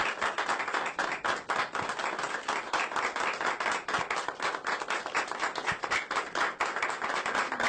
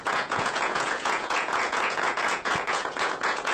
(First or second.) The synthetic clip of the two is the second